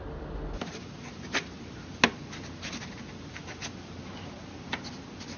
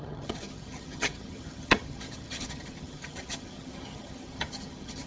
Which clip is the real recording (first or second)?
first